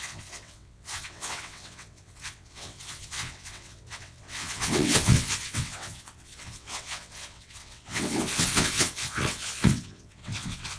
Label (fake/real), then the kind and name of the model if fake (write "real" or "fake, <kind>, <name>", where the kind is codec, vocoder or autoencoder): fake, vocoder, WaveNeXt